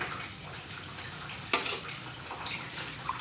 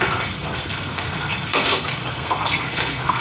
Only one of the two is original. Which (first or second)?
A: first